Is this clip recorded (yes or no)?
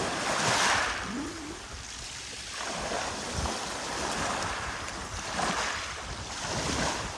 no